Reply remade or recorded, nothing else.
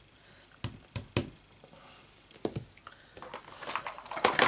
recorded